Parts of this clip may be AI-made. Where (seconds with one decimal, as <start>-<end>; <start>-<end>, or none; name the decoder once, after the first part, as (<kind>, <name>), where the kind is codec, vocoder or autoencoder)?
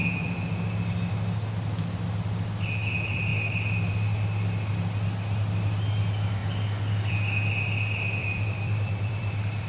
8.2-9.7 (vocoder, BigVGAN v2)